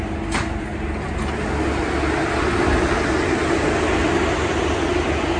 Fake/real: real